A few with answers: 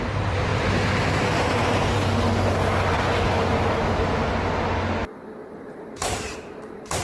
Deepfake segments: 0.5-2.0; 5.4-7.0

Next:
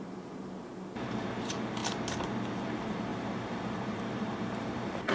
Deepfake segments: 0.0-1.8; 2.6-5.1

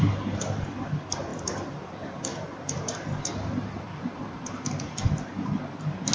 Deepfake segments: 0.0-6.1

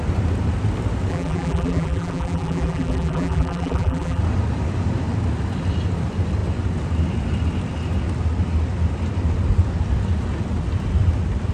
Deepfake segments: 1.1-4.2

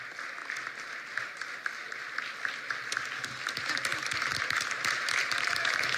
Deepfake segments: 0.4-3.3; 3.9-4.4